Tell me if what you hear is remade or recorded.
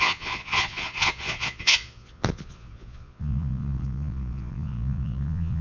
remade